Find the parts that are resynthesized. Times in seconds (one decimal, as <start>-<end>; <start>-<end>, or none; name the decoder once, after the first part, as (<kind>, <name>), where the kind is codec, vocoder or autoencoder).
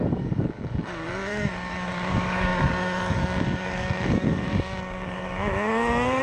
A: 0.0-6.2 (codec, DAC)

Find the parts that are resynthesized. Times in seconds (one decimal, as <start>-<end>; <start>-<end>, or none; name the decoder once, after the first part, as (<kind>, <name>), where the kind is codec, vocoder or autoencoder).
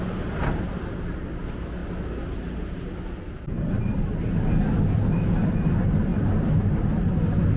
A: none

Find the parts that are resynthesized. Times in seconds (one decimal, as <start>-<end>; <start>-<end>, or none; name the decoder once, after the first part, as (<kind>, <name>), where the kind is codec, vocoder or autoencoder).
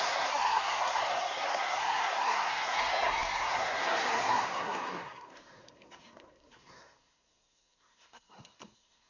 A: 0.0-9.1 (codec, SNAC)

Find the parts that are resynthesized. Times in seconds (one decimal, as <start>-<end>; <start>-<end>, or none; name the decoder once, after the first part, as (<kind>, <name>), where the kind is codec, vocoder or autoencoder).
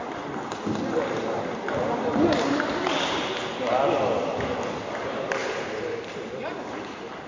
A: none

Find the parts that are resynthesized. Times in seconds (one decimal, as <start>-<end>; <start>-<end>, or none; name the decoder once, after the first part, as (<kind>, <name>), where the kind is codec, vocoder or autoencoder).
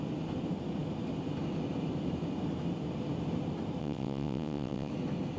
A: 3.8-4.9 (vocoder, WaveNeXt)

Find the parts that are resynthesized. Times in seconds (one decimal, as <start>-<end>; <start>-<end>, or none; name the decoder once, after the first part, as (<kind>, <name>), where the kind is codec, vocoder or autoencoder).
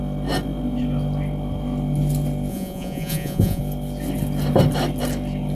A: 2.5-3.6 (vocoder, Vocos)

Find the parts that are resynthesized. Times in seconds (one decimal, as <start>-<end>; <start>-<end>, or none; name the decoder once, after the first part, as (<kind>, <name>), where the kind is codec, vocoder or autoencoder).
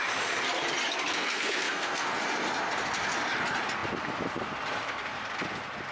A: 1.1-2.2 (codec, SNAC)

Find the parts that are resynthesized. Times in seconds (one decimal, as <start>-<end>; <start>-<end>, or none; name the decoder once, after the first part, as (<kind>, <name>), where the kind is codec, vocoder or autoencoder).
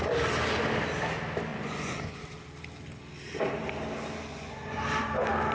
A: 1.5-2.2 (vocoder, Vocos); 4.3-4.8